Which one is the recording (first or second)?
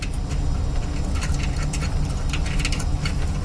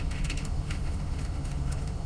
first